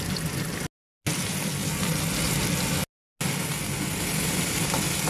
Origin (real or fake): real